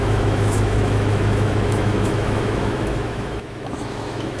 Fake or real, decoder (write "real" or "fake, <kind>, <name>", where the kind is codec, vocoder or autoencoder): fake, autoencoder, DAC-VAE